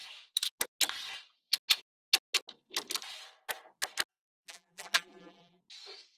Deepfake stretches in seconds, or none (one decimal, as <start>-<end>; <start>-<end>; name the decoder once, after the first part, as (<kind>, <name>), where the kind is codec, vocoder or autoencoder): 4.1-5.6 (vocoder, BigVGAN v2)